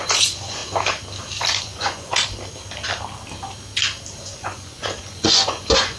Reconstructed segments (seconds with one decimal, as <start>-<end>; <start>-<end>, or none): 0.0-0.6; 1.6-2.1; 4.2-6.0

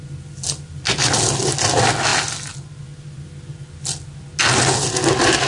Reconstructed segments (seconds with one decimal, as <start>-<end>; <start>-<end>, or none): none

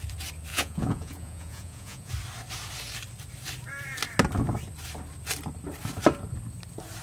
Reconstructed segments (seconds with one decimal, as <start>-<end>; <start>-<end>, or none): 0.5-2.1

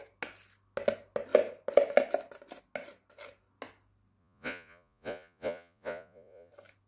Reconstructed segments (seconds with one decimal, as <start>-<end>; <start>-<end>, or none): 4.2-6.5

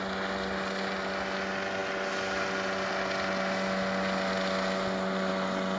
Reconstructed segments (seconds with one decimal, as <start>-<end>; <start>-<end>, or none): none

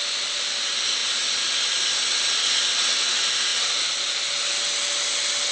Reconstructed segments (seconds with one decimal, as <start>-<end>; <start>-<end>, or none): none

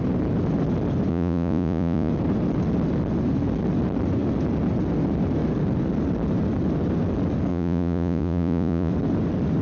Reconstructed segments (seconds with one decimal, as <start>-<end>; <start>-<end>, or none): 1.1-2.1; 7.5-8.9

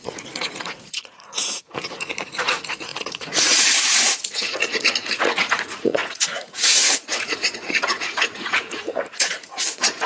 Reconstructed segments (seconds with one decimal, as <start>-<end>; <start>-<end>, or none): 0.0-10.1